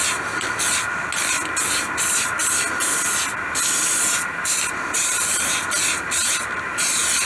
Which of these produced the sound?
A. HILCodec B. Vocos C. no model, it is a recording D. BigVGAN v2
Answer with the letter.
C